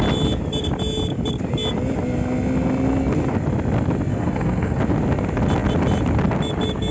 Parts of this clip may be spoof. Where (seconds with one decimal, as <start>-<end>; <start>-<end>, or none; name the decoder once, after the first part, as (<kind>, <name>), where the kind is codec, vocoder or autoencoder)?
4.1-4.8 (codec, SNAC)